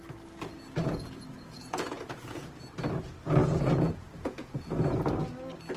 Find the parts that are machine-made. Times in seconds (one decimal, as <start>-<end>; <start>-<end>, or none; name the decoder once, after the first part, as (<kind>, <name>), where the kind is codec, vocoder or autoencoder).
0.8-2.5 (vocoder, Vocos); 3.4-5.0